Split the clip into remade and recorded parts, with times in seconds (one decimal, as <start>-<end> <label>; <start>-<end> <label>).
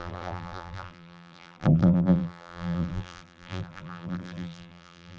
0.0-5.2 remade